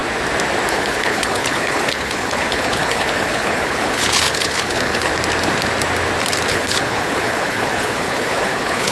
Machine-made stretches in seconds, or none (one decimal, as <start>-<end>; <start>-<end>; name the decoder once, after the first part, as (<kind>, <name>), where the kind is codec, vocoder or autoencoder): 0.7-5.1 (codec, HILCodec); 6.5-8.9